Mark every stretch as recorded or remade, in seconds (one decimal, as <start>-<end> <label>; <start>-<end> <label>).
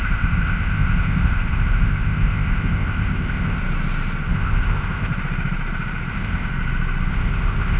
0.0-3.6 remade; 3.6-4.3 recorded; 4.3-5.1 remade; 5.1-6.1 recorded; 6.1-6.5 remade; 6.5-7.1 recorded; 7.1-7.8 remade